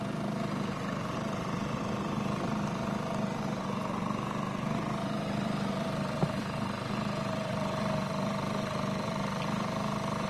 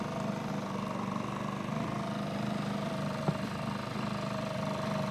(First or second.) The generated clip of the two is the first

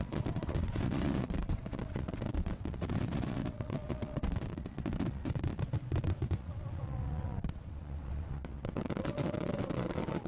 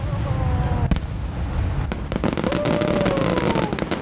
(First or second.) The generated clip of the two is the first